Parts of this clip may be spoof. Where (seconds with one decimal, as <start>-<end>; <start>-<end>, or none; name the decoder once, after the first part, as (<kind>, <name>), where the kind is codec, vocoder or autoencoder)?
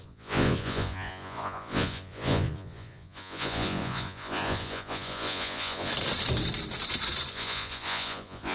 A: 0.0-5.9 (vocoder, Vocos); 7.3-8.5